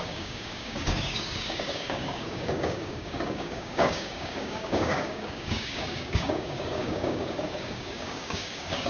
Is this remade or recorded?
remade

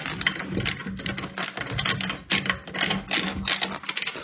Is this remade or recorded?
recorded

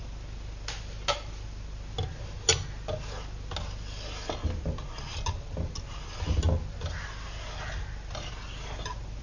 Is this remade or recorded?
recorded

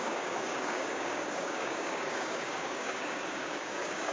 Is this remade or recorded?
remade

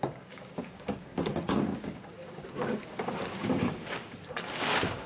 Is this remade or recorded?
remade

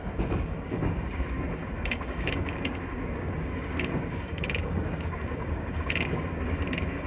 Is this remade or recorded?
remade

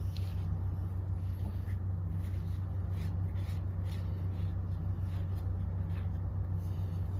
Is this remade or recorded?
recorded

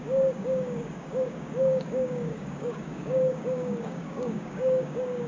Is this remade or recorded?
remade